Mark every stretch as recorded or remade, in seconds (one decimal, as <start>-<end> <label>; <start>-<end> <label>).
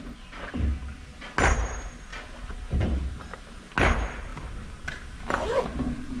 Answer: 0.0-6.2 recorded